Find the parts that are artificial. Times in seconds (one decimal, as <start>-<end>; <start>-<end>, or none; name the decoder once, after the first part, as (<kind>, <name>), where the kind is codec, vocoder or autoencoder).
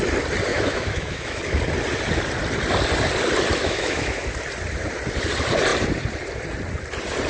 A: 0.5-1.4 (autoencoder, DAC-VAE); 3.6-4.2